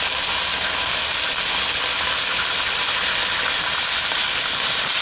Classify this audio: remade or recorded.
recorded